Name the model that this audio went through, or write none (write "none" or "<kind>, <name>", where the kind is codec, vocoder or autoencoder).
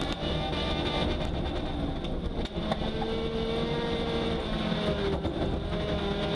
none